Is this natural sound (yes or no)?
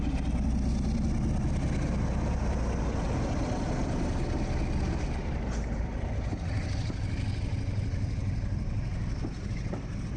yes